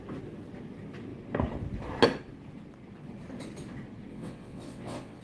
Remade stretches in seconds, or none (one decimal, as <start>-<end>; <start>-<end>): 4.1-5.2